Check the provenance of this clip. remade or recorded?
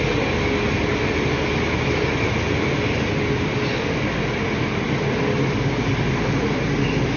recorded